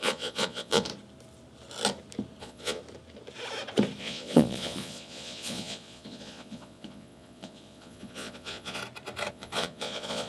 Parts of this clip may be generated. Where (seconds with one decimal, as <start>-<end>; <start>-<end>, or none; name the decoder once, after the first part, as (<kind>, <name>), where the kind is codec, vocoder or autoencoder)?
0.0-0.9 (vocoder, Vocos); 2.4-2.8; 4.0-8.8; 9.3-10.3